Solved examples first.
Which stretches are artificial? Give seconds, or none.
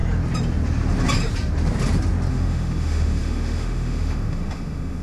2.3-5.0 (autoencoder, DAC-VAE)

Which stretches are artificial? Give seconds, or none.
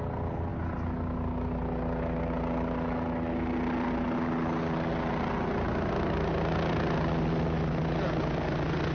none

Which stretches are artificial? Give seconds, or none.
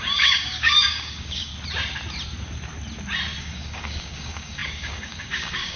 0.0-1.5 (codec, DAC); 3.4-5.8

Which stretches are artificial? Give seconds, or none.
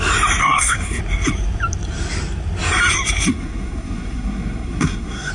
0.4-1.0 (codec, SNAC); 3.3-5.3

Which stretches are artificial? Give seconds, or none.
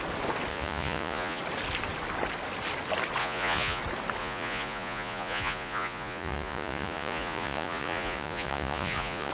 0.5-1.4 (vocoder, Vocos); 3.2-3.8; 4.2-9.3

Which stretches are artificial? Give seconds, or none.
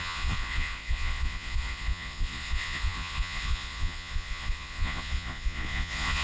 0.0-6.2 (vocoder, Vocos)